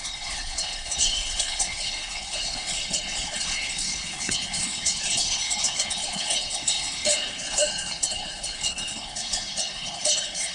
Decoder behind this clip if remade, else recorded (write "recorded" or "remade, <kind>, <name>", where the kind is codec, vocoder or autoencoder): remade, codec, HILCodec